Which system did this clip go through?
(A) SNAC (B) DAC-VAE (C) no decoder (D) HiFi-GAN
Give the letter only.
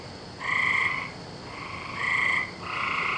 C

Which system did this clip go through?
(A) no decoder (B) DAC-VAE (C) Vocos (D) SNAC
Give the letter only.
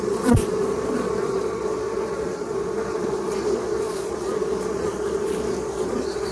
C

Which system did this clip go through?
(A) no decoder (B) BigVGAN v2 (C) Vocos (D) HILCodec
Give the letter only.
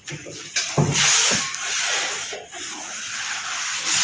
A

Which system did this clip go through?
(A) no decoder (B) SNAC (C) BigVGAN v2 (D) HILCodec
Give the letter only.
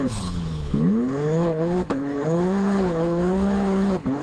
D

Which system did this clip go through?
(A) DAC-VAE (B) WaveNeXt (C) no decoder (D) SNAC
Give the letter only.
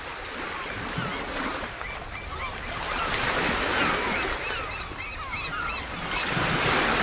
C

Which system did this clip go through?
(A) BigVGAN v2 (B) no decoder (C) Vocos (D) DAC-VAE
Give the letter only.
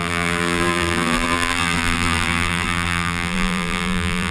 A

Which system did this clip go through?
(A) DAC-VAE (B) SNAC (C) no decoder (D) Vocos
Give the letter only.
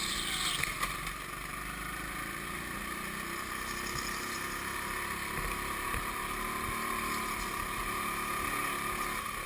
C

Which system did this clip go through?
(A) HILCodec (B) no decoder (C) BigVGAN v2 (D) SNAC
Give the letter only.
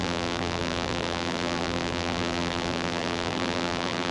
C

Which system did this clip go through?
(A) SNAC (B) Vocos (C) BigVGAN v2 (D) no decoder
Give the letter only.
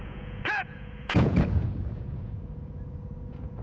B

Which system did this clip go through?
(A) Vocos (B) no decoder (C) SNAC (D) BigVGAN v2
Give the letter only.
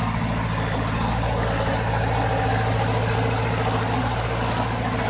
B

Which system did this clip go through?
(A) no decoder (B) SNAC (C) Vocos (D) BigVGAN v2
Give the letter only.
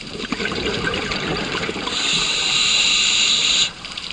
D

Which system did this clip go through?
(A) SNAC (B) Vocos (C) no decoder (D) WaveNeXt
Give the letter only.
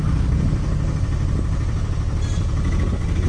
C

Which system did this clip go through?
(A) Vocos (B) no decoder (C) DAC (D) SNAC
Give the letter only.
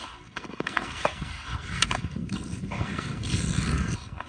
D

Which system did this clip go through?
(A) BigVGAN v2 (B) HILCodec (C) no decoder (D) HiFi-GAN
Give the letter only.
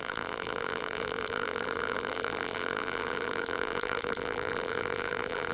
A